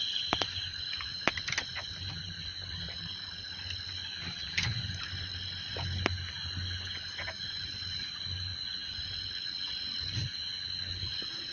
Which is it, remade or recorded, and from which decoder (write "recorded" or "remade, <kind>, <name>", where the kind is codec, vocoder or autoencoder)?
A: recorded